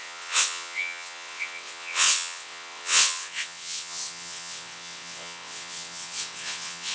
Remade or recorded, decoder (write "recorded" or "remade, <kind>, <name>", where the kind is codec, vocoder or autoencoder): remade, vocoder, WaveNeXt